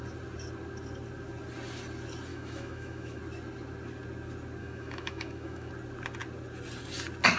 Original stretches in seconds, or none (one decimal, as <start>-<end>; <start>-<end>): 0.0-2.3; 3.2-4.6; 5.7-7.4